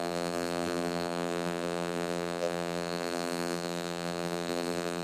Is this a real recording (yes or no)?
no